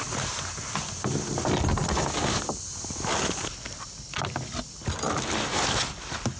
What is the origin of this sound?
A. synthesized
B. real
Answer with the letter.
B